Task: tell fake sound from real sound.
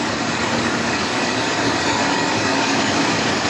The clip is fake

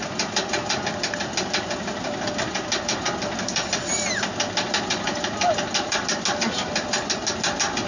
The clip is real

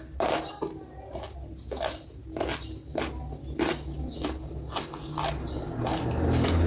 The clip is real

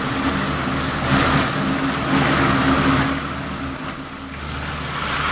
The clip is real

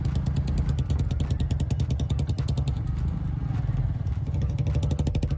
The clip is real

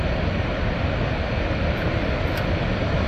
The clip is real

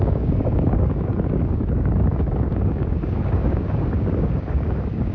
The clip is fake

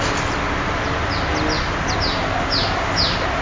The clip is real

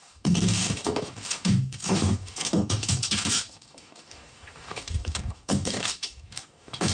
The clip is fake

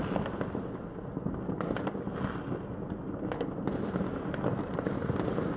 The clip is real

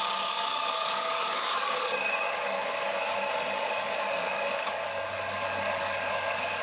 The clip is fake